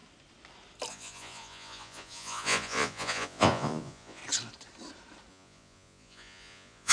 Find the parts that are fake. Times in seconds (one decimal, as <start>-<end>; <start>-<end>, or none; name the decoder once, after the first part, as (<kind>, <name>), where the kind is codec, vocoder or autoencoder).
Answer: 0.9-4.2 (vocoder, Vocos); 5.3-6.9